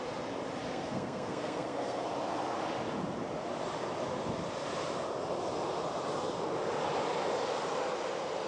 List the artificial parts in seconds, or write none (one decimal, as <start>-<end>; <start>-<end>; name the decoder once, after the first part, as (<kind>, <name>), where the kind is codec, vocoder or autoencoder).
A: 0.7-2.1 (codec, SNAC)